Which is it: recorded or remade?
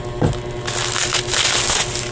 recorded